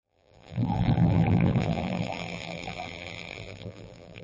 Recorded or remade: remade